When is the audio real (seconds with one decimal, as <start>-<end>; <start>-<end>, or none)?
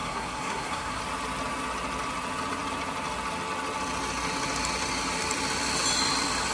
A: 1.0-6.5